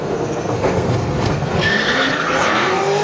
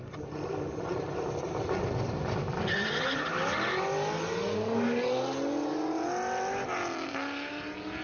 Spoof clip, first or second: first